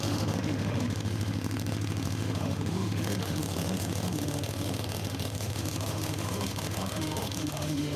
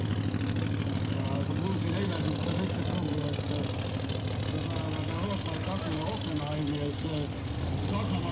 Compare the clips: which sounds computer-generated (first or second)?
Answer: first